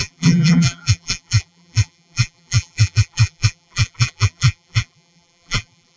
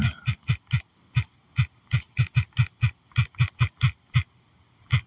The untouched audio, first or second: second